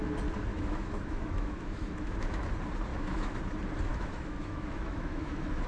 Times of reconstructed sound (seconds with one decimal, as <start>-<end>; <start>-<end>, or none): 0.5-2.5; 2.9-3.4; 3.9-5.7